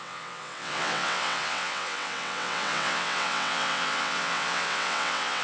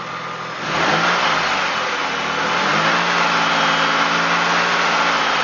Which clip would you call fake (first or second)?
first